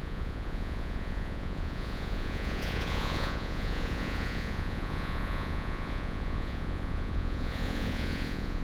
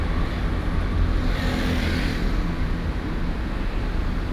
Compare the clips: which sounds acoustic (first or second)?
second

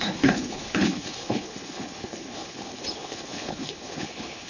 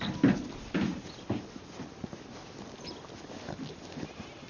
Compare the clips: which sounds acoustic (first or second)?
second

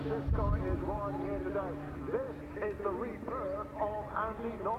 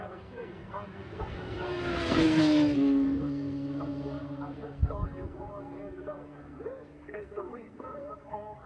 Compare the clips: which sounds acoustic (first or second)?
first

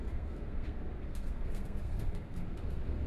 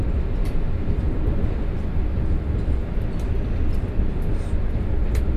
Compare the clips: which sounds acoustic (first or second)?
second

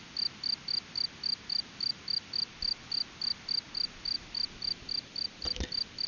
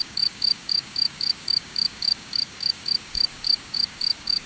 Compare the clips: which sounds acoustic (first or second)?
first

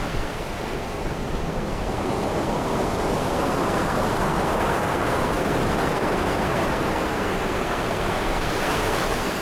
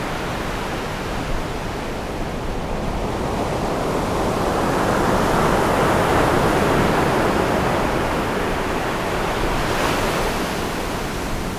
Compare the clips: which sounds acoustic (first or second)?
second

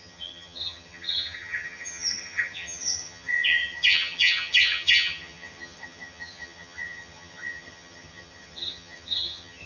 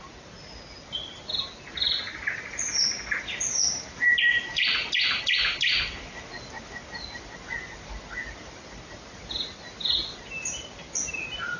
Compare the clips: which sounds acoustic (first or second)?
second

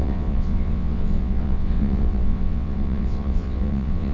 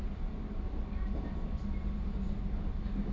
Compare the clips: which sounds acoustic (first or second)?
second